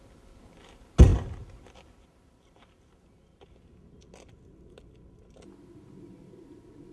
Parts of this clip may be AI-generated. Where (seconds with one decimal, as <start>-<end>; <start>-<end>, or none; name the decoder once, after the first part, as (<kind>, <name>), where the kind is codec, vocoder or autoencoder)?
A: none